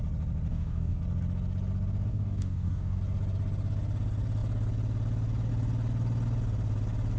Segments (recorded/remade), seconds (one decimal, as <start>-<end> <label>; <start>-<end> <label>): 0.0-0.5 recorded; 0.5-1.0 remade; 1.0-2.1 recorded; 2.1-3.0 remade; 3.0-7.2 recorded